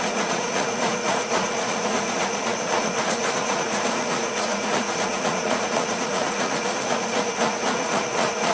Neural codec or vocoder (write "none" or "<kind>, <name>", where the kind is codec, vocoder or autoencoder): vocoder, Vocos